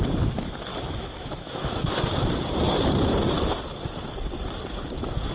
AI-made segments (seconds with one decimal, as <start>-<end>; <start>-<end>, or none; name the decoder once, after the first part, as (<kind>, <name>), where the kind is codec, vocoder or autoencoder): 0.7-1.9 (autoencoder, DAC-VAE)